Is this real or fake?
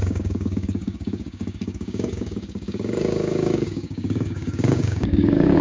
fake